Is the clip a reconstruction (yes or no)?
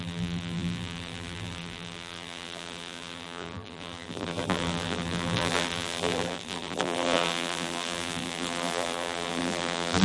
yes